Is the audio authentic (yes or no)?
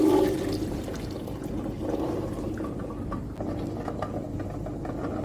yes